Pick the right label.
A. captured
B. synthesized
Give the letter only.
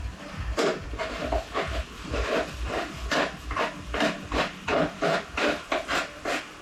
B